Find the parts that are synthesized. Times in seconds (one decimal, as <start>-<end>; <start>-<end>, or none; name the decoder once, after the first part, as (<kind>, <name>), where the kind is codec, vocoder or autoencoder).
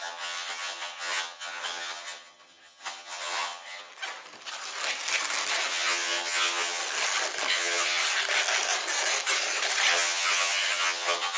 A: 0.0-3.9 (vocoder, HiFi-GAN); 5.7-6.8; 7.5-8.0; 9.9-11.4